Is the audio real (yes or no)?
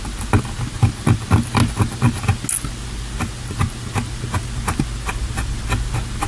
yes